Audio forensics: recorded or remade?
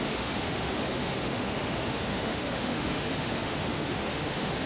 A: remade